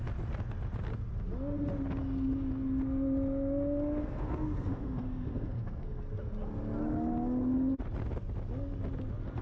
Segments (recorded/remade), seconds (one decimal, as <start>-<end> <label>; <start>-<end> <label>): 0.0-4.0 recorded; 4.0-6.0 remade; 6.0-9.4 recorded